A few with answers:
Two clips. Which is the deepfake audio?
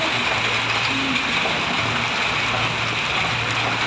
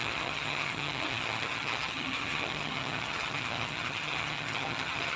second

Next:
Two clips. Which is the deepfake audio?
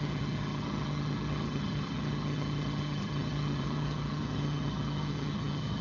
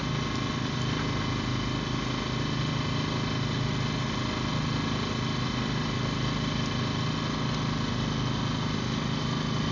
first